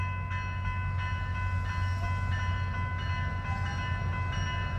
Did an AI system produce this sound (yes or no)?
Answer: no